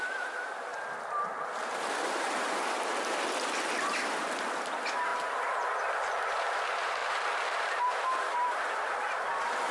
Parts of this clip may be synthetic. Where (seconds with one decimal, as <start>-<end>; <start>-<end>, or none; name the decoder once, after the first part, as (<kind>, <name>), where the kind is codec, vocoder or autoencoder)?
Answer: 0.0-0.7 (vocoder, BigVGAN v2); 2.1-2.9; 3.8-5.1; 6.3-7.0; 7.8-9.7